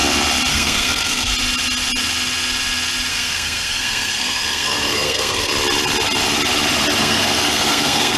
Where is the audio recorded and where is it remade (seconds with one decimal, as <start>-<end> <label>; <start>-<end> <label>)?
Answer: 0.0-0.5 recorded; 0.5-1.3 remade; 1.3-3.1 recorded; 3.1-5.5 remade; 5.5-7.0 recorded; 7.0-8.2 remade